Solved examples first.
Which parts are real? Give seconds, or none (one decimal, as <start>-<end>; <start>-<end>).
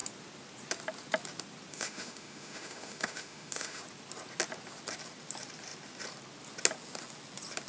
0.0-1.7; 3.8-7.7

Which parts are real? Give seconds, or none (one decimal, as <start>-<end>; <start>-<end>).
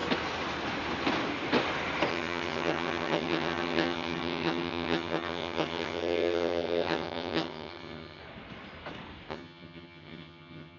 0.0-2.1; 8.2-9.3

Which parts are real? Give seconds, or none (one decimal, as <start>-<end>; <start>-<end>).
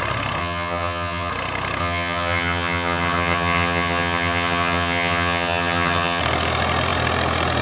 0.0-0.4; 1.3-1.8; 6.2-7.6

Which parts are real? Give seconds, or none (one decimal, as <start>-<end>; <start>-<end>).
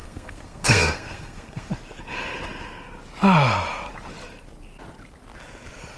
1.7-6.0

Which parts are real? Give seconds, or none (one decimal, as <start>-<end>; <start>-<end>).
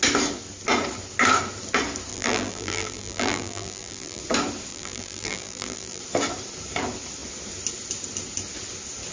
0.0-2.1; 4.2-4.7; 6.0-9.1